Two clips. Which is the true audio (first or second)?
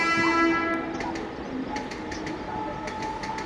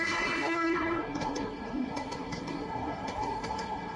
first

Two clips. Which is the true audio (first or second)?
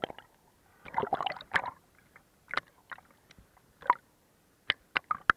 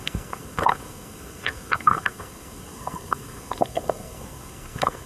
first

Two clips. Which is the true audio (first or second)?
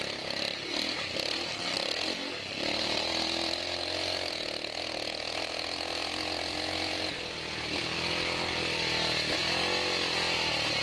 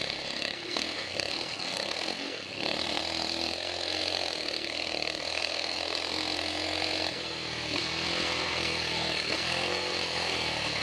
first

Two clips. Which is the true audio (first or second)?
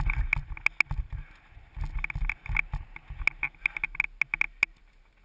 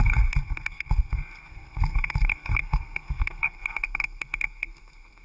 first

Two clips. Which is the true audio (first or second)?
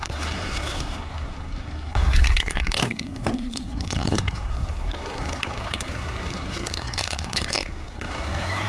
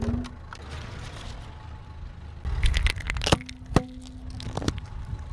second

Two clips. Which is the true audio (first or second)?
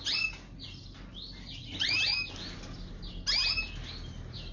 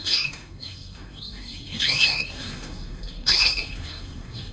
first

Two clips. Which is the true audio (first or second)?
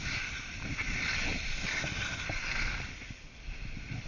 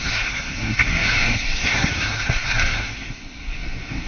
first